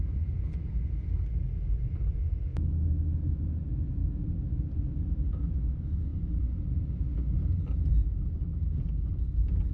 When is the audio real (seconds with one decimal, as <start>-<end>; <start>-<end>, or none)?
0.0-2.5; 3.4-9.7